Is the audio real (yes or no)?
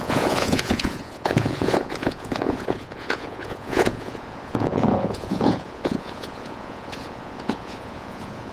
no